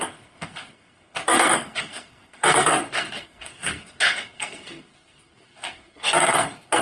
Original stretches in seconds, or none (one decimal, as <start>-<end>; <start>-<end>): none